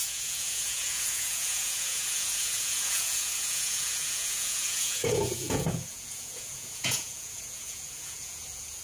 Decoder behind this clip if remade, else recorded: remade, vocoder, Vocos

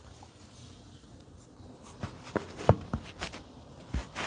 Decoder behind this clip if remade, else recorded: recorded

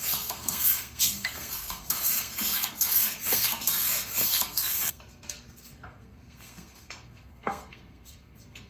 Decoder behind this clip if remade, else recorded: remade, codec, SNAC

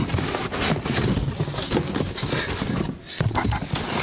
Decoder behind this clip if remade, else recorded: recorded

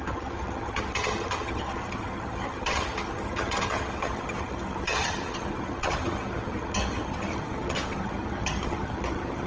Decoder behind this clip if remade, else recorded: remade, vocoder, HiFi-GAN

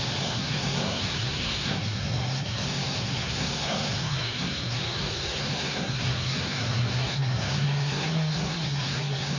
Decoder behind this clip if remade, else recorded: remade, codec, SNAC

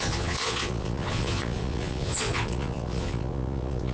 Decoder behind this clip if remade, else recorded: remade, vocoder, Vocos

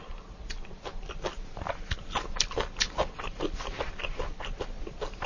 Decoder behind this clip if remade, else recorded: recorded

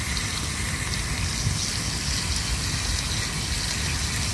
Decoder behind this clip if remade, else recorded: recorded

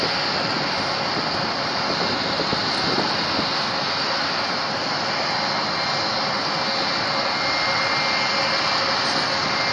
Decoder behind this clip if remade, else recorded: recorded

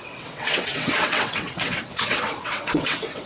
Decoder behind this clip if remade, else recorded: remade, vocoder, WaveNeXt